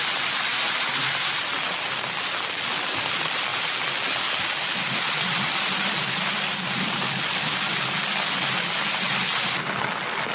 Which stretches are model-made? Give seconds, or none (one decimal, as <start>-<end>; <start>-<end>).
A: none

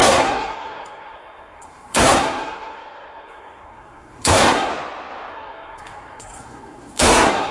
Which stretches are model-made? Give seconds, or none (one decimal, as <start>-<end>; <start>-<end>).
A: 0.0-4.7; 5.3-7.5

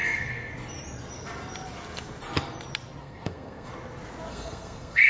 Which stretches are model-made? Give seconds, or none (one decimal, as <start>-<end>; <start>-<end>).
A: 0.0-0.5; 3.0-3.7; 4.3-5.1

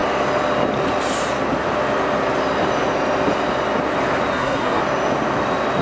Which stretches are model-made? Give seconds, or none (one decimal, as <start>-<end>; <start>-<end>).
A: 4.3-4.8

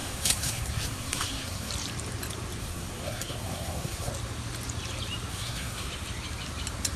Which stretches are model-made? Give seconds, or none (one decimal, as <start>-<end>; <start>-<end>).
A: 0.0-1.7; 2.6-4.1; 5.3-5.9

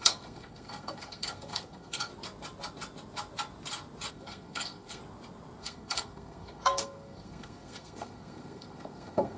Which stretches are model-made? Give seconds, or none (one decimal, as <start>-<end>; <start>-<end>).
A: 0.0-2.1; 4.1-5.0; 5.6-9.4

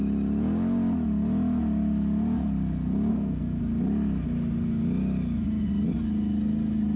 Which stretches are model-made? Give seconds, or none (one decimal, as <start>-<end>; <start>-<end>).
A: 3.1-3.6